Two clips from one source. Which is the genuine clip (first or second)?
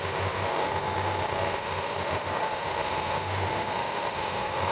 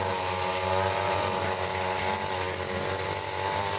second